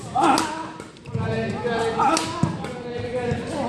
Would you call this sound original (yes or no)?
yes